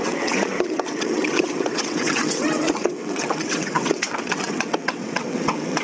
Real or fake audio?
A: fake